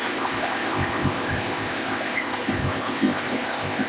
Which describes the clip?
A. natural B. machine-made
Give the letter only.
B